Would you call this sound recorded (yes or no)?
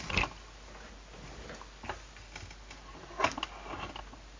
yes